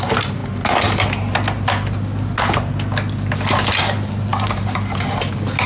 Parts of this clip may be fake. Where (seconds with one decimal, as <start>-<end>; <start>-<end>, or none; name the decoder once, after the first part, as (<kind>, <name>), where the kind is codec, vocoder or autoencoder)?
none